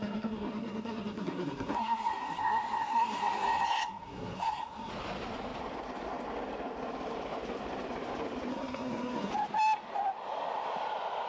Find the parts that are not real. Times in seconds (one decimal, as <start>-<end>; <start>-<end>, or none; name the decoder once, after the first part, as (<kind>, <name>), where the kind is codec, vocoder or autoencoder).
0.0-4.9 (codec, SNAC); 8.5-9.3